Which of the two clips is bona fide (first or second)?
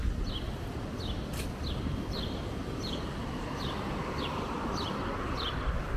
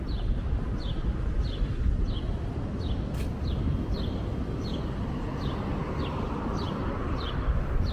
second